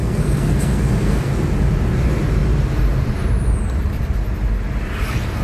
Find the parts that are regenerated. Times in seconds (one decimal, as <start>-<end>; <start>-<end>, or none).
0.0-1.3